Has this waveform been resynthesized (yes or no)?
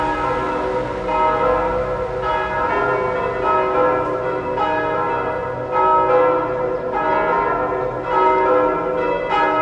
no